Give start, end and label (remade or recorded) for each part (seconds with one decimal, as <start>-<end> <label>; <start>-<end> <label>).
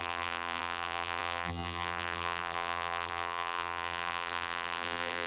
0.0-5.3 remade